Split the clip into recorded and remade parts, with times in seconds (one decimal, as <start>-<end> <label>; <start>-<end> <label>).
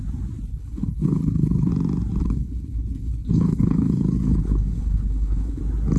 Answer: 0.0-0.5 recorded; 0.5-1.7 remade; 1.7-2.2 recorded; 2.2-5.6 remade; 5.6-6.0 recorded